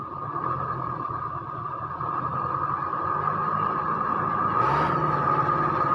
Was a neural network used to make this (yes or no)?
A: no